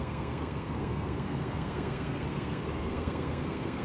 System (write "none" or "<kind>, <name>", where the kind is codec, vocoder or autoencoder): codec, SNAC